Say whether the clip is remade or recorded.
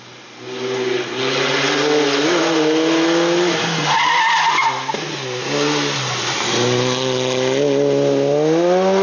recorded